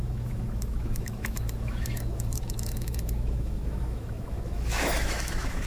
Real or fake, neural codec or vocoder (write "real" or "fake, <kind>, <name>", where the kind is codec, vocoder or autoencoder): fake, autoencoder, DAC-VAE